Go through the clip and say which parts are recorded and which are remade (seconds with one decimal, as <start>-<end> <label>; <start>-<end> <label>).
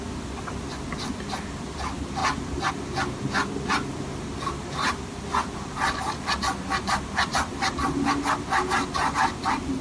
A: 0.0-9.8 recorded